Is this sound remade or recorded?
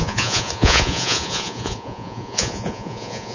remade